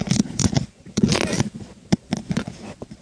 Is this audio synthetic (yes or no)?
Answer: yes